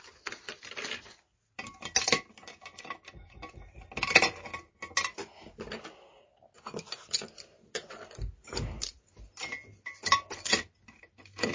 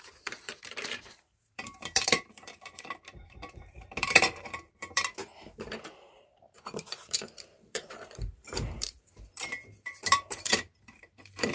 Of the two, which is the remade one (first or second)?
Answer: second